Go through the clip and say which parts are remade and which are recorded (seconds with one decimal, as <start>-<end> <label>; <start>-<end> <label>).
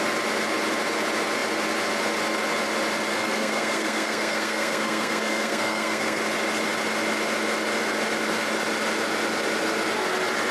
0.0-3.1 recorded; 3.1-6.2 remade; 6.2-10.5 recorded